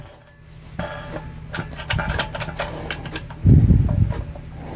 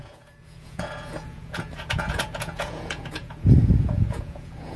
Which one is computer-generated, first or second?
second